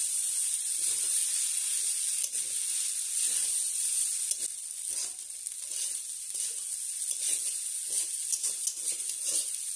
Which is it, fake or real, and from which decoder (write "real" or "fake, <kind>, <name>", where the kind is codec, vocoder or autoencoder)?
real